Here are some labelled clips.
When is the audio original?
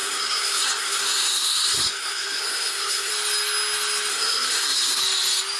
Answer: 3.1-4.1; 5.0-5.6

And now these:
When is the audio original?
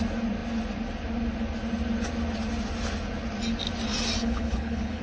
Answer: 0.0-4.2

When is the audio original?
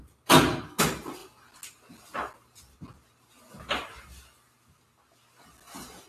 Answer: 0.0-6.1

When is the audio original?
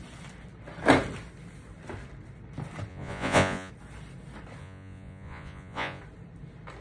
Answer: 0.0-2.9; 3.7-4.6; 6.0-6.8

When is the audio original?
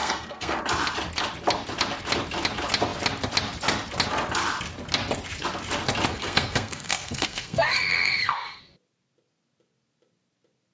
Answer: 0.6-6.1; 8.6-10.7